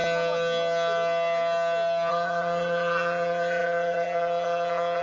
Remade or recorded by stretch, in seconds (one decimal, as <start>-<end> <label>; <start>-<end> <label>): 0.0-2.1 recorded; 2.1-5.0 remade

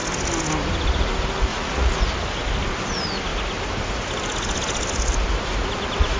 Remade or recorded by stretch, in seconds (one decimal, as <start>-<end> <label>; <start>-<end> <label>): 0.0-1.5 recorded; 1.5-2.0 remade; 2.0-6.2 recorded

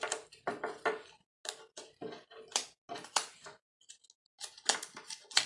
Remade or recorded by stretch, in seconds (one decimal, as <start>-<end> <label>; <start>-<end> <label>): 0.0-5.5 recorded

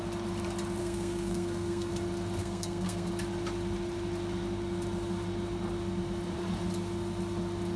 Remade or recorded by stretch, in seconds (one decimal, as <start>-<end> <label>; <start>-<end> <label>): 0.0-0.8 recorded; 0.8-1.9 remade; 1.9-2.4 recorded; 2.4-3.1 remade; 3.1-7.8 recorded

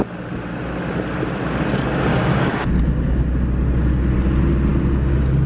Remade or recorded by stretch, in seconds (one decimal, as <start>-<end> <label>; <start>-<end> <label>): 0.0-2.1 recorded; 2.1-2.7 remade; 2.7-5.5 recorded